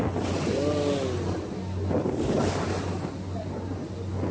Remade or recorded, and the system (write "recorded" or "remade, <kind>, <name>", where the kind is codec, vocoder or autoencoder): recorded